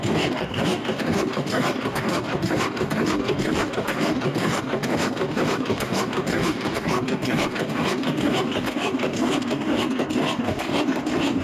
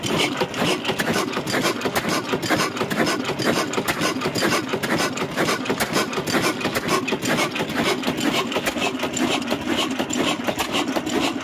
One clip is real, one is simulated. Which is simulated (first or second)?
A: first